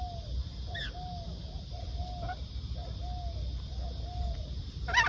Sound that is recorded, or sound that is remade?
recorded